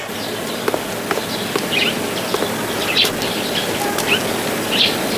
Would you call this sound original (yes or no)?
yes